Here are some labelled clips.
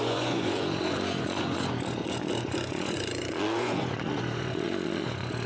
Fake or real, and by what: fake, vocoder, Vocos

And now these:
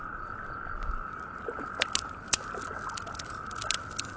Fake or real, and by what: real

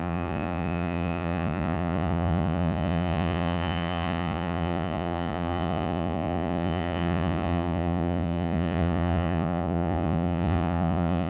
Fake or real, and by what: fake, vocoder, Vocos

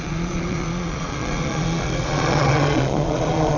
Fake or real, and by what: fake, vocoder, Vocos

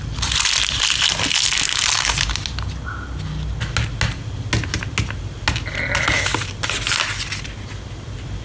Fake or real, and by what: real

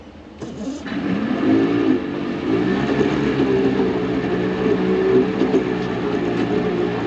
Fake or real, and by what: real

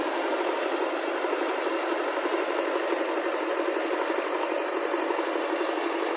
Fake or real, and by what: real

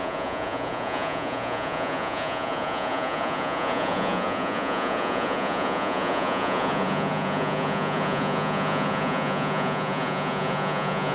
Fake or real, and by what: fake, vocoder, Vocos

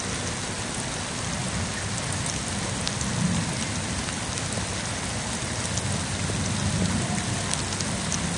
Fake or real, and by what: real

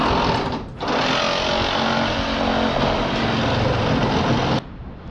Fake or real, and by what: real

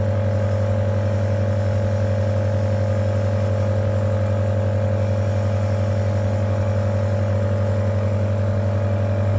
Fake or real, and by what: real